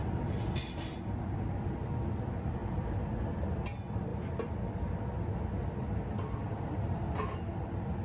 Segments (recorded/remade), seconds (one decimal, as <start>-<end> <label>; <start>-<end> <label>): 0.0-2.6 recorded; 2.6-3.3 remade; 3.3-4.1 recorded; 4.1-4.7 remade; 4.7-8.0 recorded

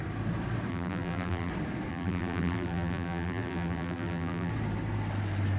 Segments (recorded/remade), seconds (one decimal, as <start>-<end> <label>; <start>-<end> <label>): 0.0-0.7 recorded; 0.7-1.5 remade; 1.5-1.9 recorded; 1.9-4.5 remade; 4.5-5.6 recorded

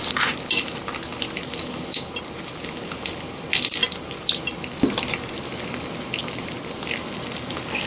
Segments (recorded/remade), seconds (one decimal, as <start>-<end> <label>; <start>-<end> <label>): 0.0-6.2 recorded; 6.2-6.8 remade; 6.8-7.9 recorded

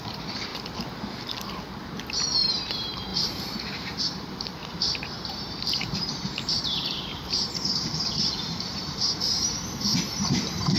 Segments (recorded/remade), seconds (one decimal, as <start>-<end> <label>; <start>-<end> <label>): 0.0-0.5 remade; 0.5-2.5 recorded; 2.5-10.8 remade

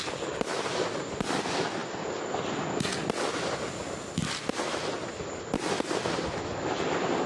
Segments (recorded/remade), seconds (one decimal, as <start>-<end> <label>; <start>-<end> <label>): 0.0-7.3 recorded

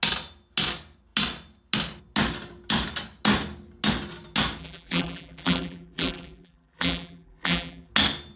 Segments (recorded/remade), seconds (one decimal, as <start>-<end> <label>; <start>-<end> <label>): 0.0-4.6 recorded; 4.6-7.9 remade; 7.9-8.4 recorded

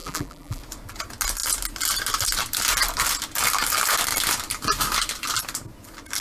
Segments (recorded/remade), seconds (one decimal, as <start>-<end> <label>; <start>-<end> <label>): 0.0-0.6 remade; 0.6-6.2 recorded

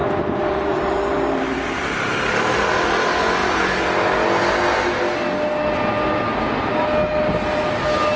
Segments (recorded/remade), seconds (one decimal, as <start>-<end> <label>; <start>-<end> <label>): 0.0-1.8 remade; 1.8-8.2 recorded